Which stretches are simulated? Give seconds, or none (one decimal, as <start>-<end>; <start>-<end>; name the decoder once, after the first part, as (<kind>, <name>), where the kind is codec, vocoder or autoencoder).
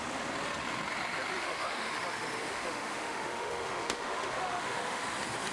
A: 1.4-1.9 (autoencoder, DAC-VAE); 2.4-5.0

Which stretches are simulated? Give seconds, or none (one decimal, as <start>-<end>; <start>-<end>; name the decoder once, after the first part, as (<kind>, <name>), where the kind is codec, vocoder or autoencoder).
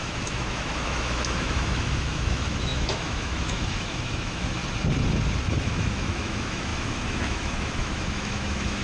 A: 0.0-4.6 (autoencoder, DAC-VAE); 5.6-8.8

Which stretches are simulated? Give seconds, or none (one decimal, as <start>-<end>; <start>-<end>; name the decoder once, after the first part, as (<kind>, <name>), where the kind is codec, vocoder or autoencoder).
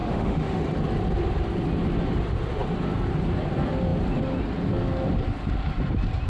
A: 0.0-0.6 (autoencoder, DAC-VAE)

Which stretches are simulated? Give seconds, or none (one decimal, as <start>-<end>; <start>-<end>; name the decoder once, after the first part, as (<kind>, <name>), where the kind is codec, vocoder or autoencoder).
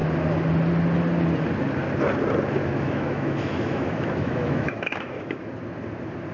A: 2.6-5.5 (autoencoder, DAC-VAE)